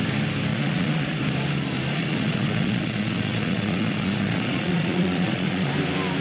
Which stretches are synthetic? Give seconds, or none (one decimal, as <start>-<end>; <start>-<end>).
0.5-1.2; 2.0-5.7